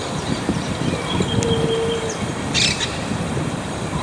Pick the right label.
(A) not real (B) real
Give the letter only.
B